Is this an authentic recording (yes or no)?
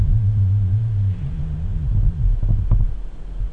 yes